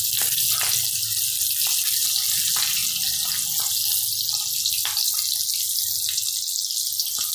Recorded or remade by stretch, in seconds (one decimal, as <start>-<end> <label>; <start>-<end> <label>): 0.0-7.3 recorded